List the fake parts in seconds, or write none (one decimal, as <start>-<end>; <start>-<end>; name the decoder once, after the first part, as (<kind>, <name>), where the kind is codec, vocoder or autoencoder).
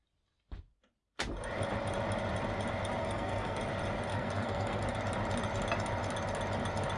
3.0-3.6 (codec, SNAC); 4.1-4.8